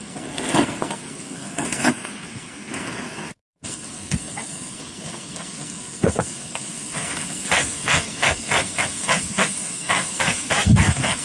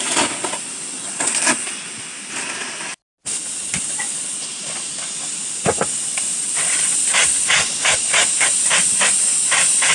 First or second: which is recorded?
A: second